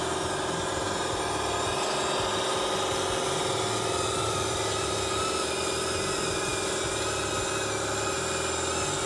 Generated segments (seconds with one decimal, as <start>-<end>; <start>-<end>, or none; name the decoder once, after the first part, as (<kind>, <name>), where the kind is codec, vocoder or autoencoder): none